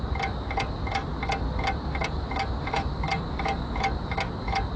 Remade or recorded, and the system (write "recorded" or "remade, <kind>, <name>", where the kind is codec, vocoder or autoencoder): recorded